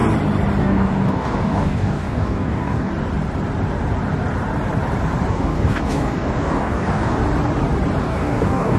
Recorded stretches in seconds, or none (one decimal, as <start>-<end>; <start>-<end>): 0.0-0.6; 2.9-5.3; 7.2-8.0